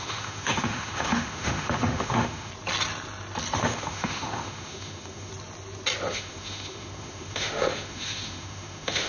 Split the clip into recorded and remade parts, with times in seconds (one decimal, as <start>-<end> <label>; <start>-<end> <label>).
0.0-2.5 remade; 2.5-3.6 recorded; 3.6-5.3 remade; 5.3-6.1 recorded; 6.1-9.1 remade